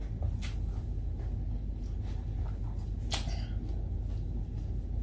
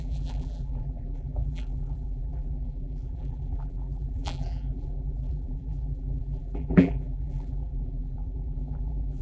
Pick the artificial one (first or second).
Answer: second